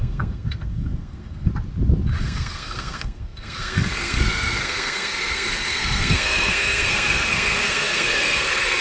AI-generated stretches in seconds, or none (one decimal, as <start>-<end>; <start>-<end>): 0.0-1.5; 2.2-8.8